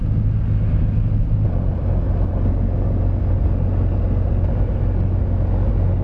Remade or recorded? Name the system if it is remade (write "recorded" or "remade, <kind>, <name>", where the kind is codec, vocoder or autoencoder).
recorded